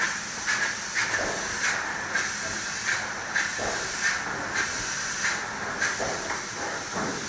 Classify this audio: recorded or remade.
recorded